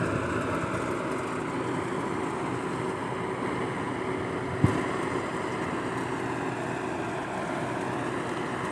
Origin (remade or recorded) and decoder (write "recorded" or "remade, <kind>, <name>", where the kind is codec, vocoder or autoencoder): recorded